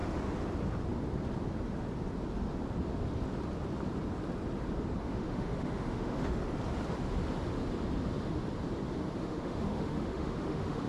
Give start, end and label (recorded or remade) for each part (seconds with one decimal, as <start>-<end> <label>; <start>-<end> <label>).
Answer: 0.0-5.0 recorded; 5.0-6.4 remade; 6.4-9.2 recorded; 9.2-10.9 remade